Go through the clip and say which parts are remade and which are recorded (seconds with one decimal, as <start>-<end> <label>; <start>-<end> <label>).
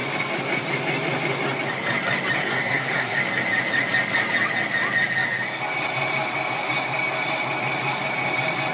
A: 0.0-2.4 recorded; 2.4-3.2 remade; 3.2-8.7 recorded